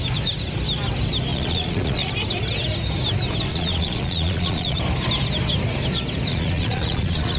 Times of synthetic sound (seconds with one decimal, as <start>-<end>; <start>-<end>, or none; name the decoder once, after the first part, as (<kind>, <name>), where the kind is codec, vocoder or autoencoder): 1.3-2.1 (vocoder, Vocos); 3.5-4.8; 6.3-7.4

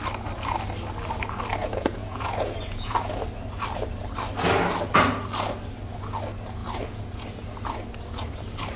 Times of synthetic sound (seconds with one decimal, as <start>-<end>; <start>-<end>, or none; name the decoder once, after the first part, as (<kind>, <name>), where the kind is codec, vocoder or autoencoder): 1.6-3.2 (vocoder, Vocos); 6.6-7.2

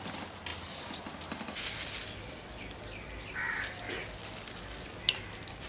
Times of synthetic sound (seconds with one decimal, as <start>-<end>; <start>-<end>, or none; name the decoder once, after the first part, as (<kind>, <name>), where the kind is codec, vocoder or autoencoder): none